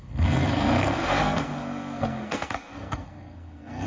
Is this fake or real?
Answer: fake